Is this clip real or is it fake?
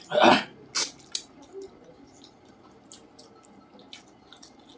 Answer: real